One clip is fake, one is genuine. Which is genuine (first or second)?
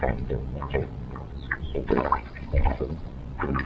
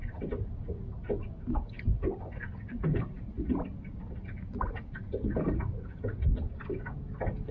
second